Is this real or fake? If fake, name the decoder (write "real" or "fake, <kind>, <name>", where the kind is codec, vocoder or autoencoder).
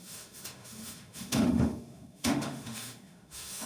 fake, autoencoder, DAC-VAE